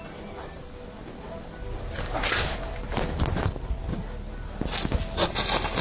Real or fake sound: real